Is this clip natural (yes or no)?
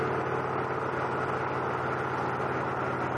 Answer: yes